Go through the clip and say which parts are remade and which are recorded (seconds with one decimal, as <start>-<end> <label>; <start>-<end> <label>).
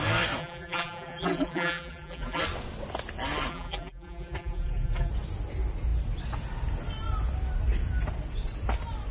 0.0-0.4 recorded; 0.4-2.4 remade; 2.4-3.5 recorded; 3.5-5.1 remade; 5.1-9.1 recorded